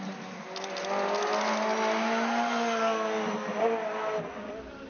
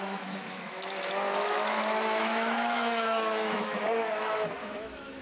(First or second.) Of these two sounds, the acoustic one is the first